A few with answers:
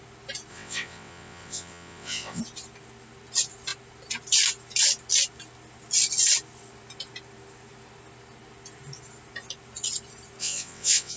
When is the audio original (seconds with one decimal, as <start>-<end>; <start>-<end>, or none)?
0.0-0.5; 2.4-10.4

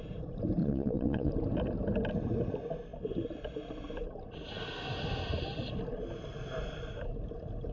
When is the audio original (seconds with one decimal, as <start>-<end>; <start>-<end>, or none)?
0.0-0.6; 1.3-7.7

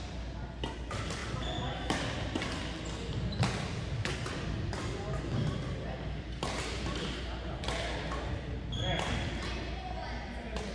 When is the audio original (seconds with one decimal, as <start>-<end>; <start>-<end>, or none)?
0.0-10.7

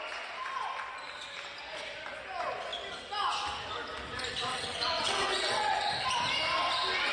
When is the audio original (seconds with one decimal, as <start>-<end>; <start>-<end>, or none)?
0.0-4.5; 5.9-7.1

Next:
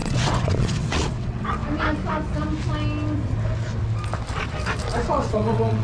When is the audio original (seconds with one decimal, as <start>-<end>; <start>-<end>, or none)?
1.6-5.1

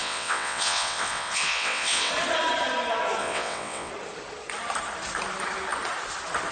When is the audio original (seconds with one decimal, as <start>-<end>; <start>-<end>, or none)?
2.1-3.2; 3.9-6.5